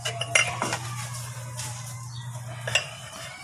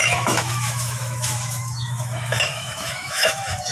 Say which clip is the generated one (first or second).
second